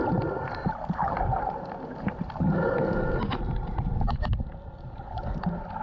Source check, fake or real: real